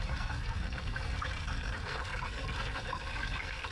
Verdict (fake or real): fake